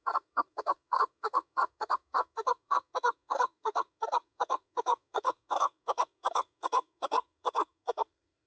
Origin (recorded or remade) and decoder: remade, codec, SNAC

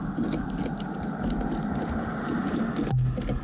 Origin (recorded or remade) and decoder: recorded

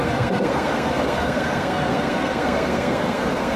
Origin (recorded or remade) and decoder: remade, codec, SNAC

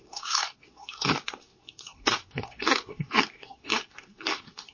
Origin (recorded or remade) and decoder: remade, codec, SNAC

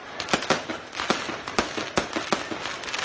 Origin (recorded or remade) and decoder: recorded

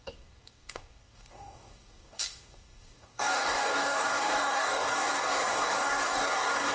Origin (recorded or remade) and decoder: remade, codec, DAC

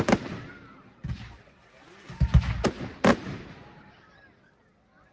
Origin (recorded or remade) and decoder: recorded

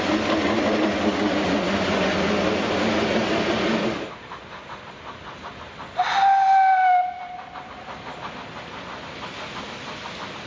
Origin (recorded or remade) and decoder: recorded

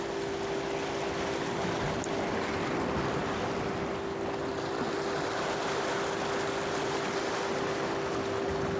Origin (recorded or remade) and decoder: recorded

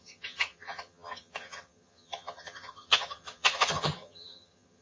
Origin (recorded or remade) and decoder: remade, vocoder, HiFi-GAN